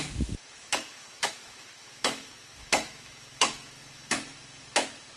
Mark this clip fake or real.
fake